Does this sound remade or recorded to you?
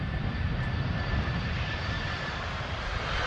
remade